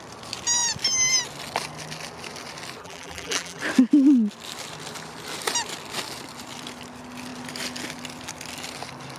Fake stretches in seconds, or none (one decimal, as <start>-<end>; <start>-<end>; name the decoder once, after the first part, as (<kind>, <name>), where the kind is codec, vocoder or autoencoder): 2.8-3.6 (vocoder, BigVGAN v2)